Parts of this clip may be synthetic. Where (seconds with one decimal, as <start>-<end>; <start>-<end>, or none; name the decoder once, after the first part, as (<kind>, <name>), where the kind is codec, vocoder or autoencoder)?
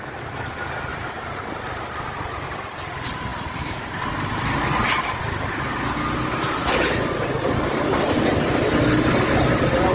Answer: 0.9-2.0 (vocoder, BigVGAN v2)